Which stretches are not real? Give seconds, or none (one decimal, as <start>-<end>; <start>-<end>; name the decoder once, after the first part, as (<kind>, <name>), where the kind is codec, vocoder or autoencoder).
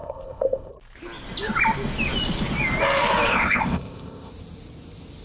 0.0-0.7 (codec, ZipCodec); 3.3-4.3